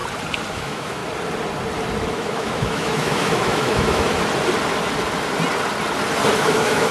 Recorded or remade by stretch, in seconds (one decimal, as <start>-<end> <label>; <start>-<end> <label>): 0.0-0.5 recorded; 0.5-1.0 remade; 1.0-2.1 recorded; 2.1-4.1 remade; 4.1-6.4 recorded; 6.4-6.9 remade